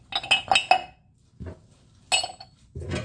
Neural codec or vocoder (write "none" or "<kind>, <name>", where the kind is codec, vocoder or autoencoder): none